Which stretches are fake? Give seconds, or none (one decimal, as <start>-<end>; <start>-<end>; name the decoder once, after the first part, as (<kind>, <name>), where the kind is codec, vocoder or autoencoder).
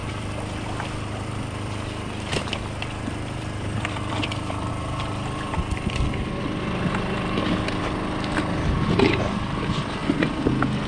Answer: 0.0-4.7 (vocoder, BigVGAN v2); 10.0-10.5